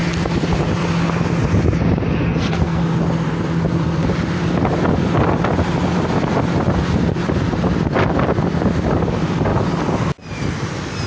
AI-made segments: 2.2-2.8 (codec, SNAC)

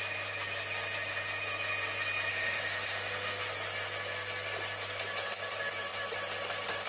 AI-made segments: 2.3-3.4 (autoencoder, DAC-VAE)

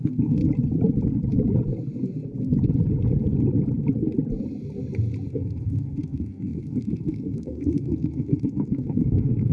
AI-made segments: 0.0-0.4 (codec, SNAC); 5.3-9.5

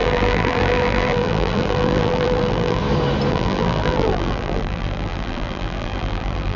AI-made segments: 0.0-2.8 (vocoder, BigVGAN v2); 3.3-6.6